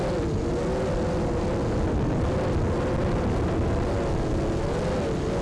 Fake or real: real